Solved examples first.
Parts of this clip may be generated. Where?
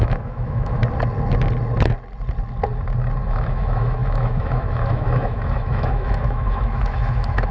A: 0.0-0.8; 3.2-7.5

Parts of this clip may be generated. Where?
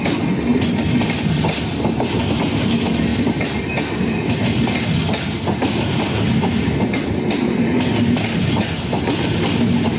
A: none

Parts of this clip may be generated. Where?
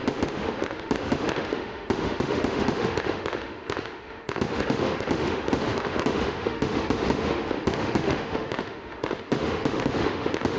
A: 0.0-10.6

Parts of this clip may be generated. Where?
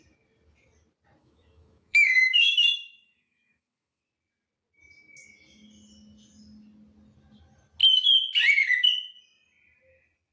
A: 1.2-4.0